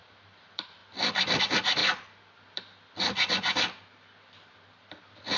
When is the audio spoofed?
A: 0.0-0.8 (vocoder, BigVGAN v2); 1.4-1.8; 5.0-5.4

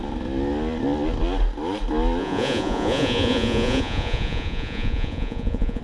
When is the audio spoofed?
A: 2.2-5.8 (vocoder, Vocos)

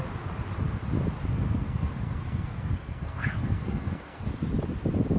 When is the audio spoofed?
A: 1.3-4.3 (codec, SNAC)